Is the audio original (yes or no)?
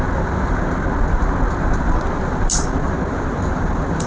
yes